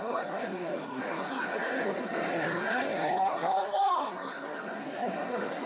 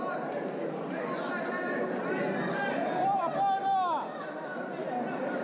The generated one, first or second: first